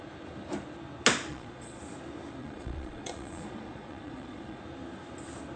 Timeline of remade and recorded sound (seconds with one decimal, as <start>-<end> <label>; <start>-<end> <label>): 0.0-1.3 recorded; 1.3-1.8 remade; 1.8-2.4 recorded; 2.4-4.6 remade; 4.6-5.6 recorded